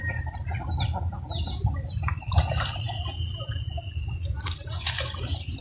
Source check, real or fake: real